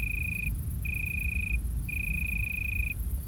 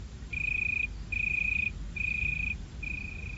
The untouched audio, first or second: second